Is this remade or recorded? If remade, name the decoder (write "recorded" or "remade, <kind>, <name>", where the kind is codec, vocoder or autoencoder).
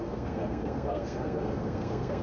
remade, codec, SNAC